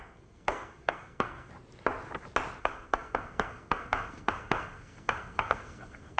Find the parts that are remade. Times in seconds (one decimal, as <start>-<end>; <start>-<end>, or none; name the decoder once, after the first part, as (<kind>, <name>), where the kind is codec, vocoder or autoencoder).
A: 0.0-1.5 (codec, SNAC); 2.6-6.2